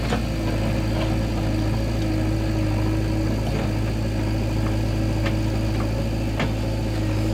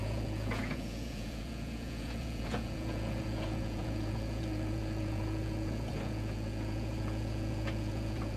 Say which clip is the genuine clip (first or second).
first